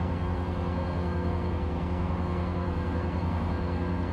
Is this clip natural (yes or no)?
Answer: no